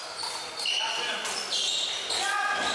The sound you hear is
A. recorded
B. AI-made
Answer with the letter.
A